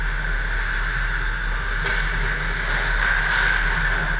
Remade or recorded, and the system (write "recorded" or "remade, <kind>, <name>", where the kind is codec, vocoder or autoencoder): recorded